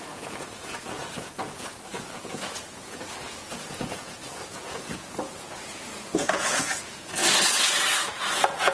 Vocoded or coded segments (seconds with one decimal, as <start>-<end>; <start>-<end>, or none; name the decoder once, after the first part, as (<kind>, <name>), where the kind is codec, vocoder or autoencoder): 0.0-7.2 (vocoder, Vocos); 8.0-8.7